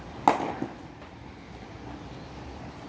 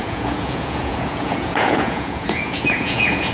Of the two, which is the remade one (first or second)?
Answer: second